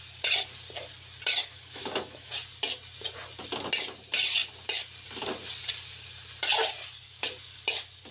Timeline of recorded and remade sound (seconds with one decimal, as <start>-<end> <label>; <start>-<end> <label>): 0.0-1.4 recorded; 1.4-2.3 remade; 2.3-8.1 recorded